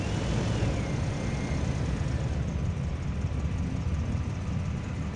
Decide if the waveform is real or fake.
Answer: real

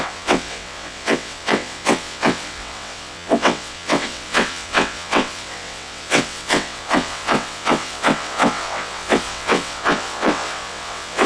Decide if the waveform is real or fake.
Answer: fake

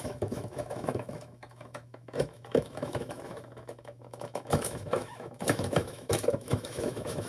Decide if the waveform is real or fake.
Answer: fake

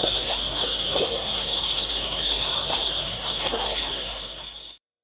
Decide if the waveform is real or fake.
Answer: fake